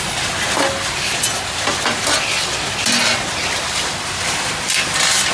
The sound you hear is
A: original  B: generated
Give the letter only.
A